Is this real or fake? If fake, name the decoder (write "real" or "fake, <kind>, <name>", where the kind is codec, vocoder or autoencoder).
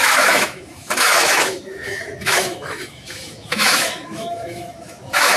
fake, autoencoder, DAC-VAE